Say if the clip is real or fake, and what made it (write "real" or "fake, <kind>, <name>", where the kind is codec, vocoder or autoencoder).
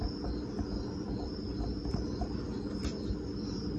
real